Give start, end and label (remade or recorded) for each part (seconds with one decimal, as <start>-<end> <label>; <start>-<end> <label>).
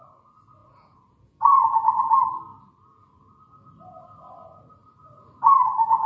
0.0-0.6 recorded; 0.6-2.0 remade; 2.0-6.1 recorded